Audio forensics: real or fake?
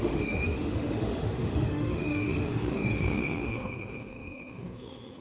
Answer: fake